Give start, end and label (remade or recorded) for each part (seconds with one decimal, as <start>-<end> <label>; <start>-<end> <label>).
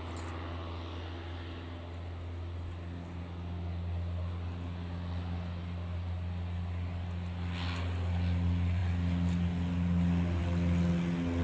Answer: 0.0-11.4 recorded